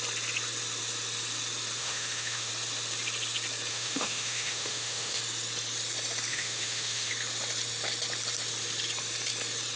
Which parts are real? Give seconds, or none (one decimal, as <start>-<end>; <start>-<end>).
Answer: 0.0-1.8; 2.5-3.7; 5.2-6.3; 7.1-9.8